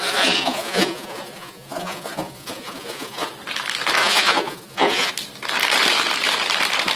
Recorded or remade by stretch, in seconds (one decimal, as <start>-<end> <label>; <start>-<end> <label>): 0.0-3.3 remade; 3.3-4.0 recorded; 4.0-5.1 remade; 5.1-7.0 recorded